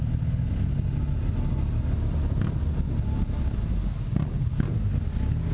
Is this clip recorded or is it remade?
recorded